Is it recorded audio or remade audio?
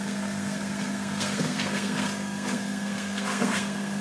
remade